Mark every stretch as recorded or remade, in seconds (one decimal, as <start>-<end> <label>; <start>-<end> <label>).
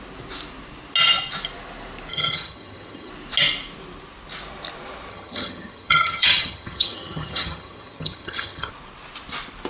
0.0-2.1 recorded; 2.1-3.1 remade; 3.1-5.1 recorded; 5.1-8.7 remade; 8.7-9.7 recorded